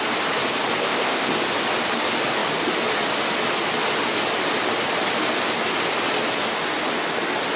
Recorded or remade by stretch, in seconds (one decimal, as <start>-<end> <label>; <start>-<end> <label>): 0.0-0.8 recorded; 0.8-1.3 remade; 1.3-7.6 recorded